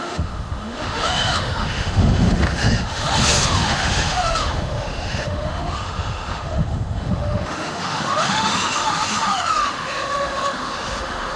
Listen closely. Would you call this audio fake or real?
fake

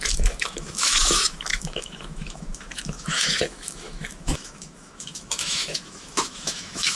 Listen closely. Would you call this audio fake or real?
fake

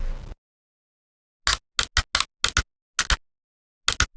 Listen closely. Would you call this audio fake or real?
real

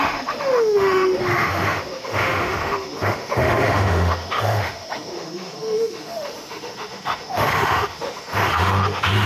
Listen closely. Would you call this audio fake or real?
fake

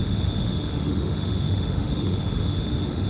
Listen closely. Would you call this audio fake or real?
fake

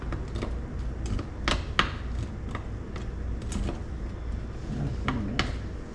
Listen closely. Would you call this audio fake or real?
real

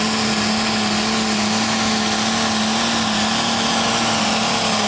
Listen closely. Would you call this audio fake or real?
real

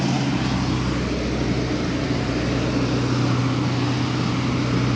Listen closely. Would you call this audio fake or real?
real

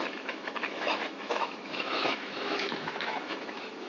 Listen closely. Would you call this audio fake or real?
fake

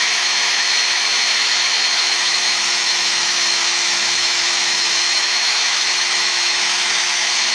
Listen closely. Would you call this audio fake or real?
fake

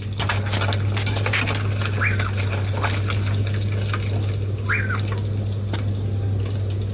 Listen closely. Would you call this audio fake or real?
real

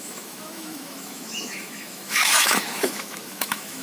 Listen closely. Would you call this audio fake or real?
fake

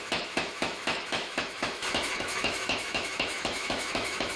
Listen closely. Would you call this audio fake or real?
fake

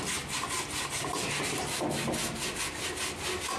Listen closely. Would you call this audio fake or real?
real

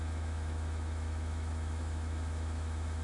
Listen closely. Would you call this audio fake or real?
fake